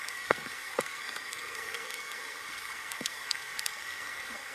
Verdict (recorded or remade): remade